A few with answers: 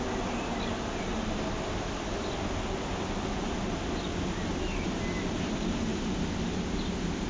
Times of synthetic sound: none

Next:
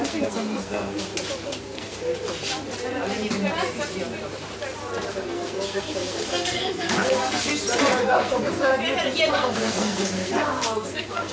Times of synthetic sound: 0.0-1.1 (codec, SNAC); 1.6-2.1; 5.1-7.5; 8.0-8.7; 9.3-11.3

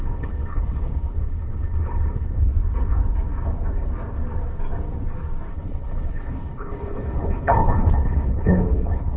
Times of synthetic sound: 0.0-2.5 (codec, HILCodec); 5.5-9.2

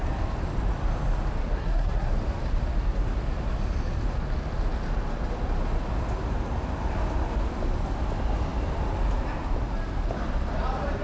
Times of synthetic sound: 1.4-2.1 (codec, SNAC)

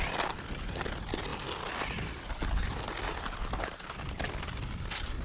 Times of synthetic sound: none

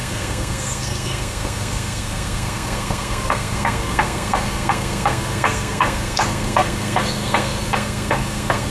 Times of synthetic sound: 0.0-8.7 (codec, SNAC)